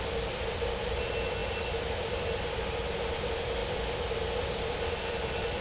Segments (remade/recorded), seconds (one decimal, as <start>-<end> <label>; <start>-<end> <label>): 0.0-5.6 recorded